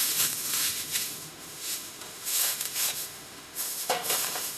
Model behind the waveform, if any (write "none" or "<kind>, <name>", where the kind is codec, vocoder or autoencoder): autoencoder, DAC-VAE